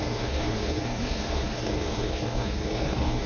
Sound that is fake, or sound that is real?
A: fake